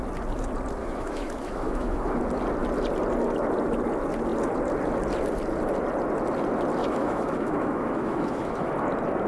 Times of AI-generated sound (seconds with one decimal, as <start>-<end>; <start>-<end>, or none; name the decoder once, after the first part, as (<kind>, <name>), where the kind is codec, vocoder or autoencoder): 0.8-2.2 (autoencoder, DAC-VAE); 6.8-8.7